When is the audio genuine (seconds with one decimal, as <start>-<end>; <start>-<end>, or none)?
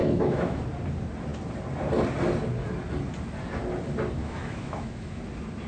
0.6-4.2; 5.2-5.7